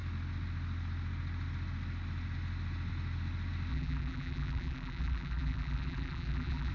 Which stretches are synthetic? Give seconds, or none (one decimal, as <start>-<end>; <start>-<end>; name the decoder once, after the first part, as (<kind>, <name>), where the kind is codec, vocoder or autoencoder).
3.7-6.7 (vocoder, BigVGAN v2)